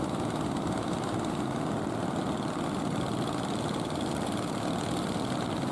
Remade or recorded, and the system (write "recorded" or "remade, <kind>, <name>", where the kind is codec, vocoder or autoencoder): recorded